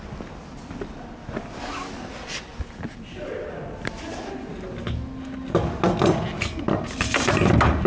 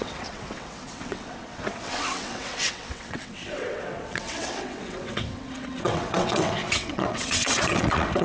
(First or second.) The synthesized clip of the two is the second